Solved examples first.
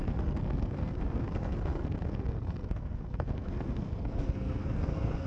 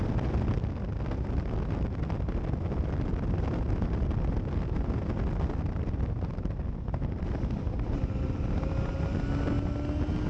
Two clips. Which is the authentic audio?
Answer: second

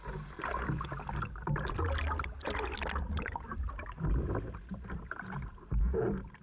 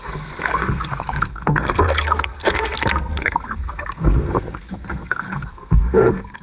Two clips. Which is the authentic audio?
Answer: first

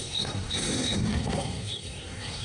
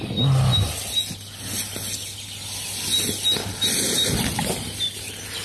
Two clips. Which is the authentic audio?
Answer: second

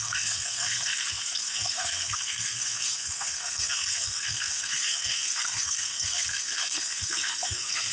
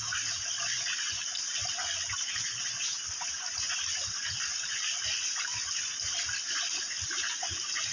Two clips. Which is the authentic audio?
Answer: second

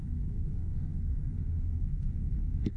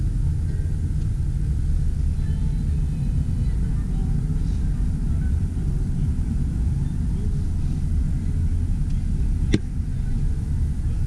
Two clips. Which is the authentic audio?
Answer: second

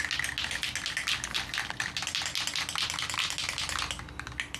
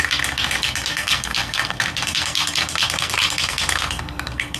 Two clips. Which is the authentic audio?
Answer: first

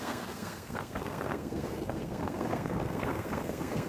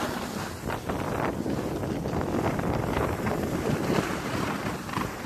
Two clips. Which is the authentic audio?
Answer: second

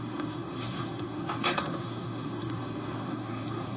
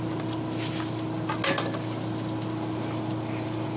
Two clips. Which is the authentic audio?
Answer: second